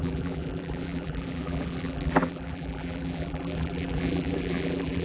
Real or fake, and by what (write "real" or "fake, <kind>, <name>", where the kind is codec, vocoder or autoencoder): fake, vocoder, BigVGAN v2